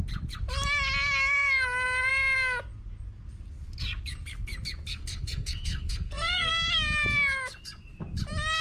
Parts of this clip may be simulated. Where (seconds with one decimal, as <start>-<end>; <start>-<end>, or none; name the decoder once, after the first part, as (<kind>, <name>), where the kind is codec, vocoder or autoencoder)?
4.9-6.5 (codec, SNAC)

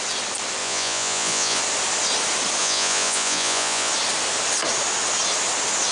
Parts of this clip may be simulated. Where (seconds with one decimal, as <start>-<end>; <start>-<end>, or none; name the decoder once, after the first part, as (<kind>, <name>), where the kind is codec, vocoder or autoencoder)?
0.6-1.6 (vocoder, Vocos); 2.6-3.9

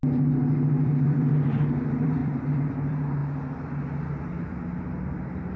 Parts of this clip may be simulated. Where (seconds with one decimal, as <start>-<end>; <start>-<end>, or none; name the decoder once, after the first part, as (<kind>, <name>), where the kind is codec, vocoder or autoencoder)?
0.8-3.2 (vocoder, BigVGAN v2); 4.8-5.6